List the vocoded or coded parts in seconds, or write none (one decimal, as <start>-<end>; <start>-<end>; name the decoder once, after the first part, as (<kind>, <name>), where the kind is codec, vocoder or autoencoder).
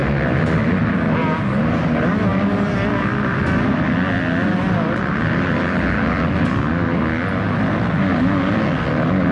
none